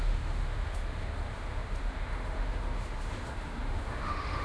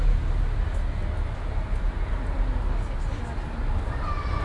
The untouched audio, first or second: second